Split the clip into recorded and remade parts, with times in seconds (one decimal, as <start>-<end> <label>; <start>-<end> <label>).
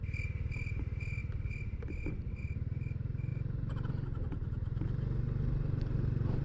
0.0-6.4 recorded